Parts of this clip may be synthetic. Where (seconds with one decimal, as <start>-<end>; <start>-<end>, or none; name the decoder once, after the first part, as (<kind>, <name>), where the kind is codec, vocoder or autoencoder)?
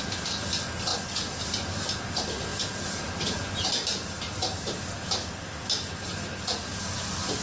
none